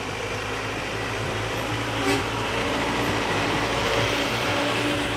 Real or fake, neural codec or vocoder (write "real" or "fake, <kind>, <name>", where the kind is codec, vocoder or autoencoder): fake, vocoder, BigVGAN v2